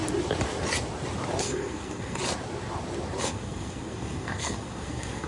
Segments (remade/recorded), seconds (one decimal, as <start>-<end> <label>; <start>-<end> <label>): 0.0-1.4 recorded; 1.4-2.2 remade; 2.2-3.2 recorded; 3.2-5.3 remade